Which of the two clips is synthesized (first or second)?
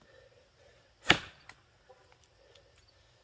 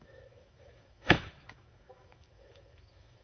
second